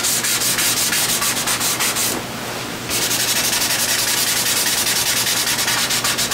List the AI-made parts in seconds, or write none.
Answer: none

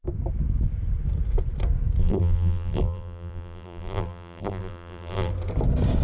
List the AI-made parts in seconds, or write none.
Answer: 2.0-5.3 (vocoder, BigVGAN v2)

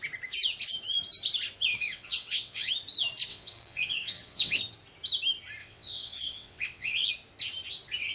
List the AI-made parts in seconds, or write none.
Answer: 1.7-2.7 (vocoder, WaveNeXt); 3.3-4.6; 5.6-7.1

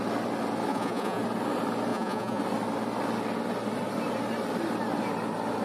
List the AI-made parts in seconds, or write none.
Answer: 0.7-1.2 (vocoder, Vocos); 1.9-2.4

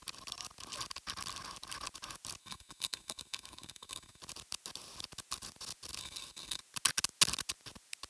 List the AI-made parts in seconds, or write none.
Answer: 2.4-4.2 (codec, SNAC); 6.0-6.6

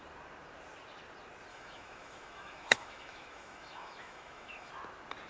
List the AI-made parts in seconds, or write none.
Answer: 1.5-4.7 (autoencoder, DAC-VAE)

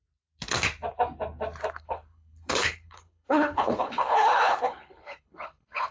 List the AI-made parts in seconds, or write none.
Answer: 1.7-5.9 (codec, HILCodec)